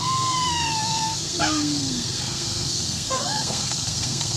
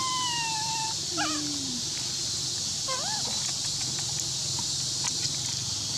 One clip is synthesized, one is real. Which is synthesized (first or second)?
first